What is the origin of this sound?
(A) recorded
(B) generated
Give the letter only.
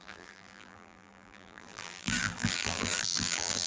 B